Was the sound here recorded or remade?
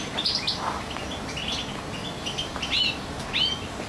recorded